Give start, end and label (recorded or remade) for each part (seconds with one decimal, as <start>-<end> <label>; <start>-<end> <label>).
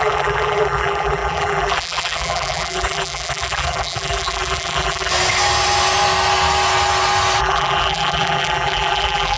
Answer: 0.0-5.1 remade; 5.1-7.4 recorded; 7.4-9.4 remade